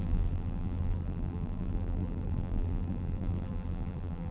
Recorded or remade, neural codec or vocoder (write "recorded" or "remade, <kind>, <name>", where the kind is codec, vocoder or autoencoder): remade, vocoder, BigVGAN v2